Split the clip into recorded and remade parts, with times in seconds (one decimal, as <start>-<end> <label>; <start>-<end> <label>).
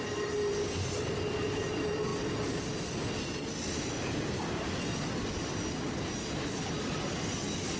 0.0-7.8 recorded